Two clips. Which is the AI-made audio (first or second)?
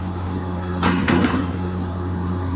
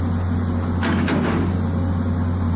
first